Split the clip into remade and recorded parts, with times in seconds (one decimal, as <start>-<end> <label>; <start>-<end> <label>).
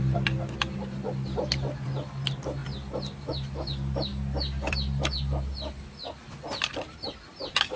0.0-7.8 recorded